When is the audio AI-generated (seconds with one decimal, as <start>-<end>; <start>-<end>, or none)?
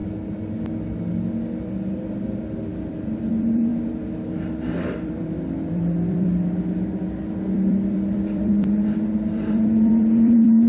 1.1-10.7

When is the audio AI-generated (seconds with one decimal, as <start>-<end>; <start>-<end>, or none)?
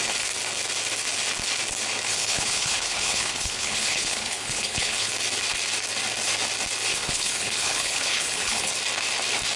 2.1-5.1; 6.9-8.7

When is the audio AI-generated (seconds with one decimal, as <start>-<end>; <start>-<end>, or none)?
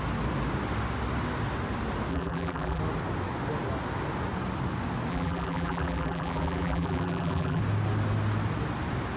2.1-2.8; 5.1-7.6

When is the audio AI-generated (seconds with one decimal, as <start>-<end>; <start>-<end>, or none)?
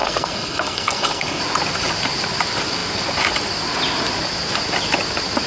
0.0-1.4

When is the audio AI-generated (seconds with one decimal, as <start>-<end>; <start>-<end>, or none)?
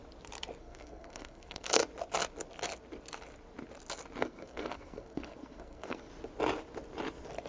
0.6-1.8; 4.2-6.1